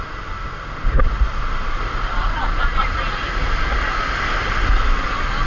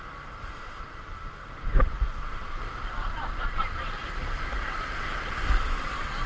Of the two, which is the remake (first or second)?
second